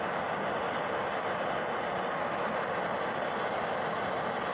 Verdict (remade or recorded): recorded